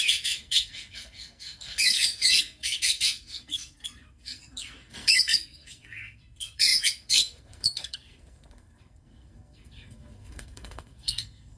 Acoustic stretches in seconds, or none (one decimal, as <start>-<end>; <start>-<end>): none